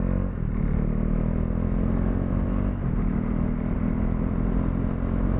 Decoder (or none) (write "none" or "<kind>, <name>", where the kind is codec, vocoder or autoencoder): none